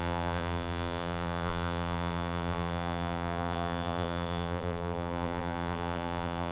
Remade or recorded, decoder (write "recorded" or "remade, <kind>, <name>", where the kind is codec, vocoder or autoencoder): remade, vocoder, BigVGAN v2